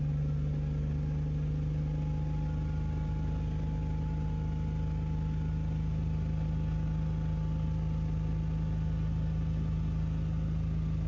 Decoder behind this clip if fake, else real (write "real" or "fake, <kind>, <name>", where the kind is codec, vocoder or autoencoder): real